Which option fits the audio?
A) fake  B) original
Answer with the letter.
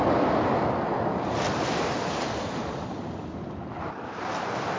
B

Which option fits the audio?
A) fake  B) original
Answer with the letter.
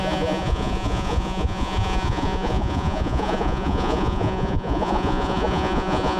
A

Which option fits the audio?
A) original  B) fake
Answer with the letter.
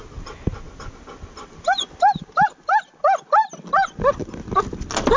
A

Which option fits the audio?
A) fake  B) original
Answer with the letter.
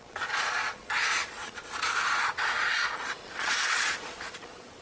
A